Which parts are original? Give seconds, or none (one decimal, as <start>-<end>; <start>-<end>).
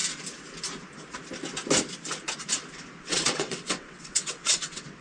0.0-3.0